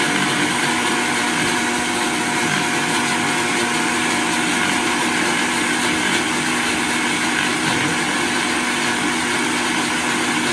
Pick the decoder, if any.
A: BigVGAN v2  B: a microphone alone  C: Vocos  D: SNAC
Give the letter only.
B